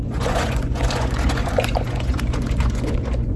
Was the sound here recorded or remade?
remade